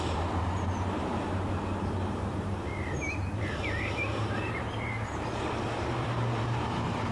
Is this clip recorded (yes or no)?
no